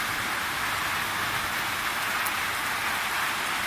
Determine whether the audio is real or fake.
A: real